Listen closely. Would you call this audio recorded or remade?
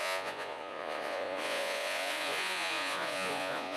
remade